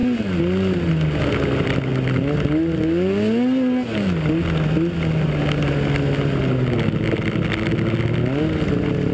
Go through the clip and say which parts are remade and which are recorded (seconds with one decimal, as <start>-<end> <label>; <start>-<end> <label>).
0.0-9.1 recorded

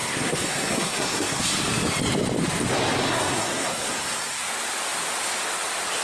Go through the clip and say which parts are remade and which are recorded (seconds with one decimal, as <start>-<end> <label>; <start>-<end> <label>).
0.0-1.4 remade; 1.4-3.0 recorded; 3.0-4.4 remade; 4.4-6.0 recorded

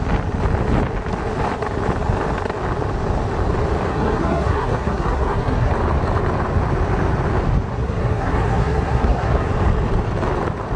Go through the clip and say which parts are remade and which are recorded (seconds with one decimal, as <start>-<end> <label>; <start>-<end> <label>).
0.0-3.9 recorded; 3.9-5.7 remade; 5.7-7.7 recorded; 7.7-9.5 remade; 9.5-10.8 recorded